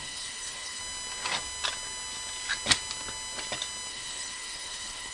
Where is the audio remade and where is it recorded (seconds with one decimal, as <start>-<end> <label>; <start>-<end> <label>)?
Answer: 0.0-0.8 remade; 0.8-3.9 recorded; 3.9-5.1 remade